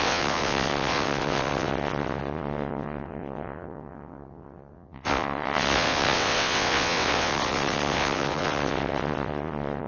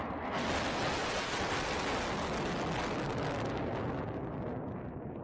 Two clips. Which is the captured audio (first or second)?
second